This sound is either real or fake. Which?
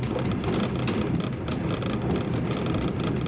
real